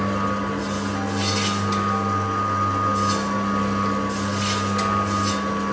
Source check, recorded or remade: recorded